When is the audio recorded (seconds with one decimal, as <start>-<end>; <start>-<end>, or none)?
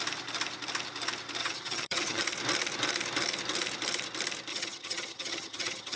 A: 0.0-1.4; 2.2-4.5